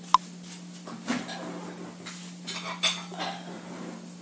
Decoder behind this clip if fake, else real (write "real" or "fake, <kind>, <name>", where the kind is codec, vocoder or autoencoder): real